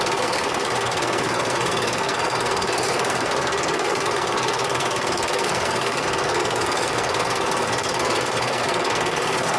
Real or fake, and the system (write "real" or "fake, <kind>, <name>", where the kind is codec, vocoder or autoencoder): fake, codec, SNAC